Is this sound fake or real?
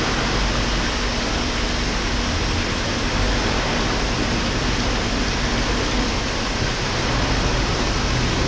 real